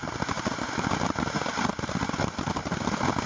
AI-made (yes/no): no